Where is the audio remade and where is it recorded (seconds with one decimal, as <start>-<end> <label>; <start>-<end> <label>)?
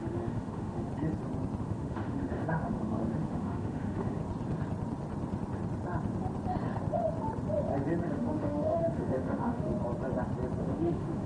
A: 0.0-0.9 remade; 0.9-1.6 recorded; 1.6-4.2 remade; 4.2-8.1 recorded; 8.1-9.7 remade; 9.7-10.6 recorded; 10.6-11.3 remade